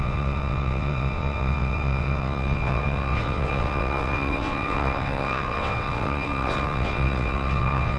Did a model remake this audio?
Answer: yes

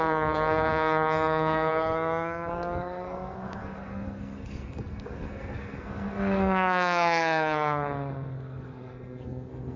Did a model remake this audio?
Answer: yes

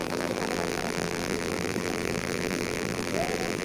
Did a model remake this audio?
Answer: yes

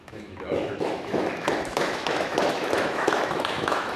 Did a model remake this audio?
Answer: yes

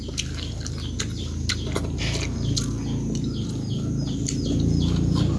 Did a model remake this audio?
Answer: no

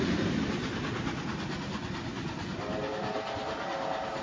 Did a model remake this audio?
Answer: no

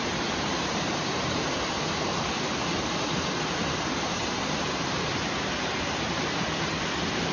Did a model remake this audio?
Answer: yes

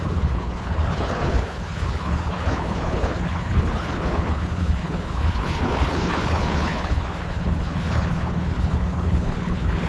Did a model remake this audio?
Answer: yes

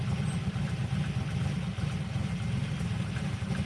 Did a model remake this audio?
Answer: no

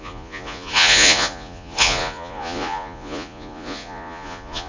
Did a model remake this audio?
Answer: yes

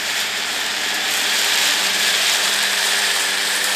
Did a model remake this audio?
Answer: yes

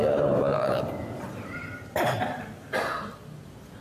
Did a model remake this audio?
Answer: yes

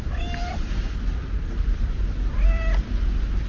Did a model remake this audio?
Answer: no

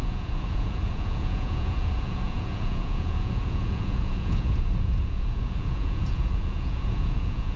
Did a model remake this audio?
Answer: yes